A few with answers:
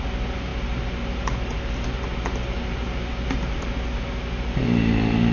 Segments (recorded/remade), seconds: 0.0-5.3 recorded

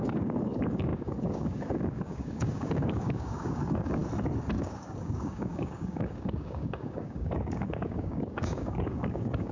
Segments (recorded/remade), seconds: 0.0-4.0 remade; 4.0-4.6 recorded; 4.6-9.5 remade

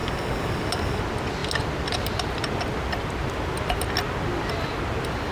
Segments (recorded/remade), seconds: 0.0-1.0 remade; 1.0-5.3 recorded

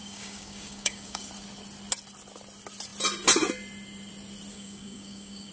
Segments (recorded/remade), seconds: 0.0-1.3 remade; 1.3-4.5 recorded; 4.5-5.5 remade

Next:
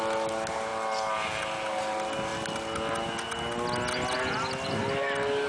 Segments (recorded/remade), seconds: 0.0-5.5 recorded

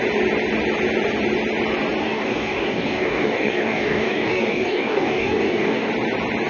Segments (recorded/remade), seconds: 0.0-2.0 recorded; 2.0-5.9 remade; 5.9-6.5 recorded

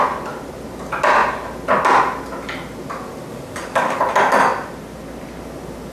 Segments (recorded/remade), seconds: 0.0-3.3 recorded; 3.3-4.0 remade; 4.0-5.9 recorded